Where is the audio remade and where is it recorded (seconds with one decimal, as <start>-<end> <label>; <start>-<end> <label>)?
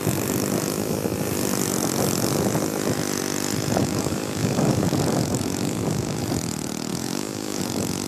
0.0-3.8 recorded; 3.8-6.2 remade; 6.2-6.9 recorded; 6.9-7.6 remade; 7.6-8.1 recorded